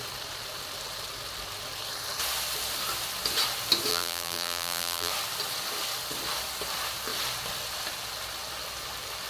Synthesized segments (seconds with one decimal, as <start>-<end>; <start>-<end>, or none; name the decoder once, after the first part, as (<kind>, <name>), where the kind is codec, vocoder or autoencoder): 3.9-5.1 (vocoder, BigVGAN v2)